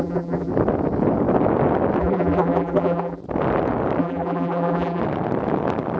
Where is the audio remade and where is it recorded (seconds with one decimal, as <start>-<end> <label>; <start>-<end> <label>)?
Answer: 0.0-0.5 remade; 0.5-2.0 recorded; 2.0-3.2 remade; 3.2-4.0 recorded; 4.0-5.0 remade; 5.0-6.0 recorded